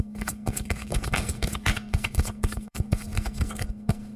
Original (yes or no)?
no